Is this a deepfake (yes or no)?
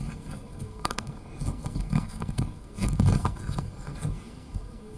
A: yes